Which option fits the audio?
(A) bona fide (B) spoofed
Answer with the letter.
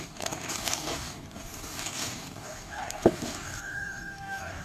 B